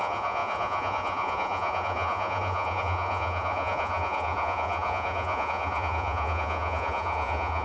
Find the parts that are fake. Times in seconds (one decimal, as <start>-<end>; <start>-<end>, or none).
0.0-7.6